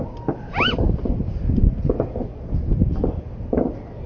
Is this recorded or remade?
recorded